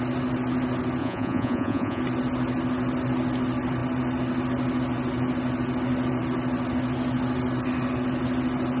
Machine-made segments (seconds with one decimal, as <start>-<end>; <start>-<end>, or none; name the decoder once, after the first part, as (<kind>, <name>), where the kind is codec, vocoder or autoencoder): 1.0-2.0 (vocoder, Vocos)